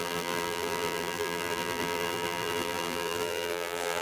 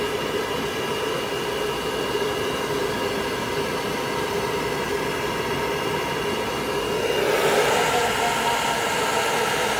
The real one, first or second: second